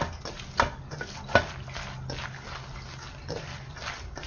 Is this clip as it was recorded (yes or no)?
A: yes